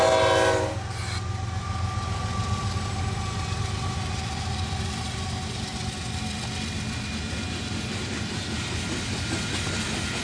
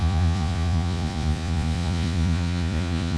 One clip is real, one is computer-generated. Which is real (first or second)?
first